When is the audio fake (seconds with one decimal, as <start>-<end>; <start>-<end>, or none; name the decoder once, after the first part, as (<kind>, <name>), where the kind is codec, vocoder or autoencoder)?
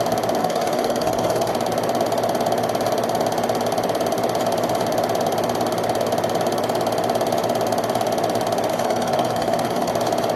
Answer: 0.4-1.5 (codec, SNAC); 8.7-9.9